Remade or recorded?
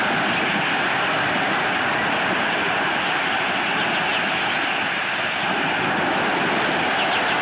recorded